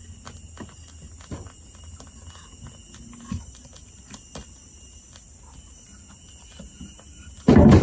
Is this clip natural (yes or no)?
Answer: yes